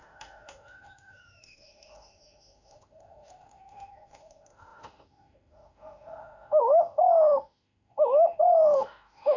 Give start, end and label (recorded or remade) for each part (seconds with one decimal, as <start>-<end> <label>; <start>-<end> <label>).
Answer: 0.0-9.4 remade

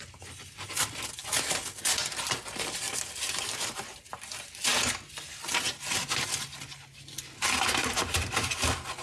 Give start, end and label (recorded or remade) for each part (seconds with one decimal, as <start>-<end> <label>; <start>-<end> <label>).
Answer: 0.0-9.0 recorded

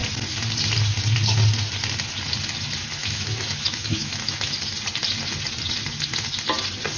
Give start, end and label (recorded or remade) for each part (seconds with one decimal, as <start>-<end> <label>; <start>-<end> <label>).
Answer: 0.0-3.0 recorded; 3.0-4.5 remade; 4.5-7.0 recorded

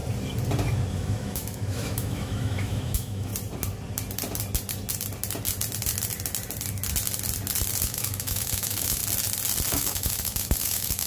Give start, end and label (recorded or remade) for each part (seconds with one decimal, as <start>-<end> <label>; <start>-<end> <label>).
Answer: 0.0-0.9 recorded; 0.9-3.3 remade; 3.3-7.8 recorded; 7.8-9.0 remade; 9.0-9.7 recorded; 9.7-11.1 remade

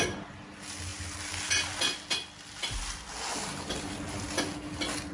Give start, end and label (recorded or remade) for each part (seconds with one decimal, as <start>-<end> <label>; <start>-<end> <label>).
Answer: 0.0-5.1 recorded

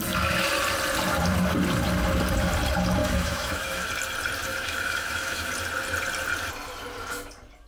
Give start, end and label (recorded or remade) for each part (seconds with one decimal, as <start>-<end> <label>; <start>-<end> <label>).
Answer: 0.0-3.0 recorded; 3.0-3.9 remade; 3.9-4.5 recorded; 4.5-5.5 remade; 5.5-7.7 recorded